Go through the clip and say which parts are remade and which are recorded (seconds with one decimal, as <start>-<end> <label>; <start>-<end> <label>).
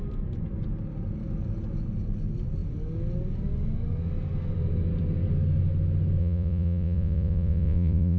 0.0-6.2 recorded; 6.2-8.2 remade